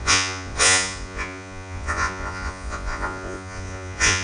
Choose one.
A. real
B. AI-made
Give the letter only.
B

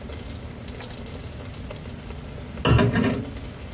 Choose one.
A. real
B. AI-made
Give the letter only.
A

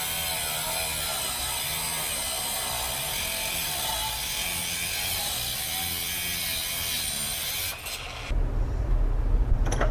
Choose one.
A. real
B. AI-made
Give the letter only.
A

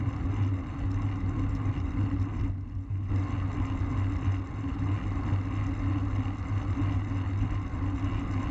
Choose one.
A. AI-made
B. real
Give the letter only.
B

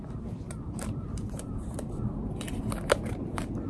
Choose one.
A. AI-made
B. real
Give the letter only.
A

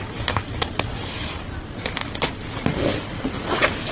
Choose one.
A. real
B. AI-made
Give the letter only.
A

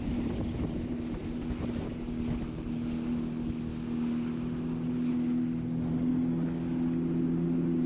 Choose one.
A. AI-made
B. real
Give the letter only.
B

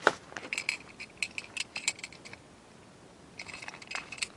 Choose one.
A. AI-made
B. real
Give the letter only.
B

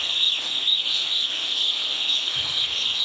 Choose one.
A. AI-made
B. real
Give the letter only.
A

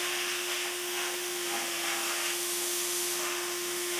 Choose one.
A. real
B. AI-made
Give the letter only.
B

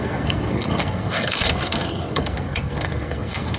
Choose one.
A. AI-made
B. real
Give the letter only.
A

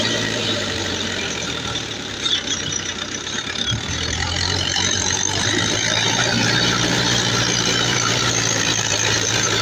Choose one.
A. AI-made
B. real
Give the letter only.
A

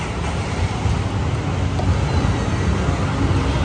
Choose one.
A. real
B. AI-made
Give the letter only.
A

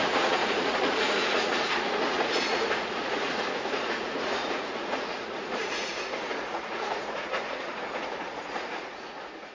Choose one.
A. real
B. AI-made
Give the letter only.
B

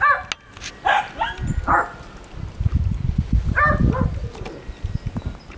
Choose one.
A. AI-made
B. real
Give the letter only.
B